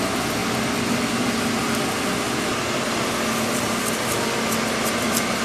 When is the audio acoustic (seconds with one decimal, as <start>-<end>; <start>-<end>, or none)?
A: 0.0-5.4